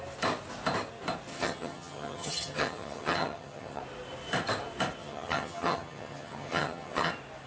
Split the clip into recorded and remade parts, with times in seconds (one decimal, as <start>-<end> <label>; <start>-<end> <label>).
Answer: 0.0-1.3 recorded; 1.3-3.8 remade; 3.8-5.0 recorded; 5.0-7.1 remade; 7.1-7.5 recorded